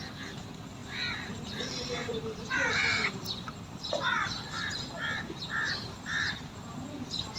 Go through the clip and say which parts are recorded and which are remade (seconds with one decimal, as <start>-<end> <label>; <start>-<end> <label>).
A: 0.0-2.0 recorded; 2.0-3.5 remade; 3.5-7.4 recorded